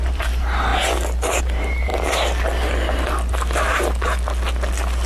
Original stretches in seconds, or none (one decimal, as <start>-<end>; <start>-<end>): 0.7-1.4; 1.9-5.1